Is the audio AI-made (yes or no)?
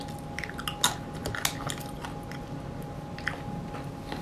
no